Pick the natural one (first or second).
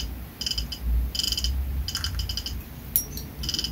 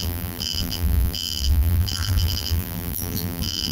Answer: first